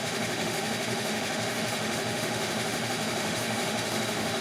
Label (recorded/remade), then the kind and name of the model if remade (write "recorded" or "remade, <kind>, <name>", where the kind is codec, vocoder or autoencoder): remade, autoencoder, DAC-VAE